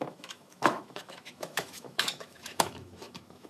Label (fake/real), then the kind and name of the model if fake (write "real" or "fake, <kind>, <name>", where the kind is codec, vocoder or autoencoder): fake, autoencoder, DAC-VAE